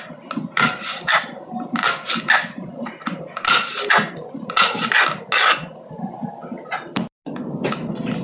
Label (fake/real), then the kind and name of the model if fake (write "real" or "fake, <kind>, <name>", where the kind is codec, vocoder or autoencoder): real